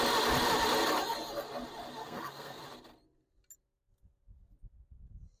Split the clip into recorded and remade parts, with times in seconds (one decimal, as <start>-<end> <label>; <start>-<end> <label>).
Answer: 0.0-2.0 recorded; 2.0-2.6 remade; 2.6-5.4 recorded